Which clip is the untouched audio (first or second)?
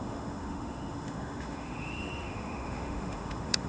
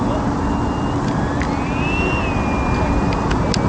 second